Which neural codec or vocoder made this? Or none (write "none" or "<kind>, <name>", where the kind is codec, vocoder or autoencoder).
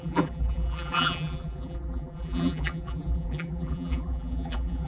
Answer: vocoder, BigVGAN v2